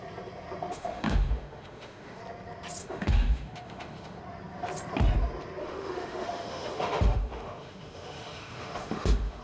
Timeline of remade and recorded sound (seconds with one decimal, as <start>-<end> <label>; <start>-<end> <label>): 0.0-0.7 recorded; 0.7-2.2 remade; 2.2-2.8 recorded; 2.8-4.2 remade; 4.2-5.6 recorded; 5.6-9.4 remade